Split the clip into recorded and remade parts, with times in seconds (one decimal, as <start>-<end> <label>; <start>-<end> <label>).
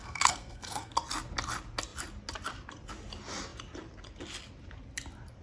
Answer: 0.0-0.9 remade; 0.9-5.4 recorded